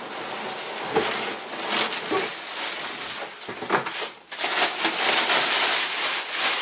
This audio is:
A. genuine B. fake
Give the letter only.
A